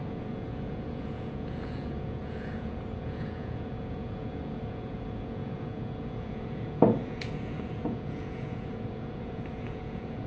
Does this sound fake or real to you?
fake